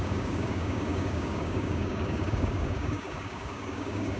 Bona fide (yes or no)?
no